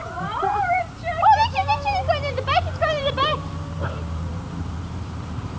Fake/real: fake